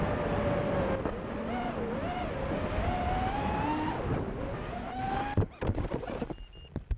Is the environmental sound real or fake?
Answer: real